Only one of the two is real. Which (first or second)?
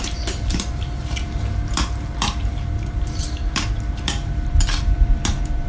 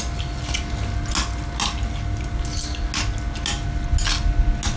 second